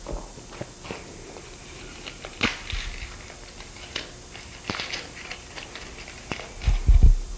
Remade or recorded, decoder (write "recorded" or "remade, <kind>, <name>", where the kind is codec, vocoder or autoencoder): recorded